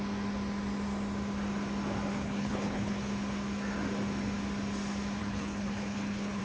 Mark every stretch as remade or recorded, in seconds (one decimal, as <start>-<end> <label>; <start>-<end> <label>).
0.0-2.1 recorded; 2.1-3.1 remade; 3.1-5.2 recorded; 5.2-6.4 remade